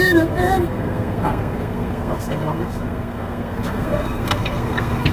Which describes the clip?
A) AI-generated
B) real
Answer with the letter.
A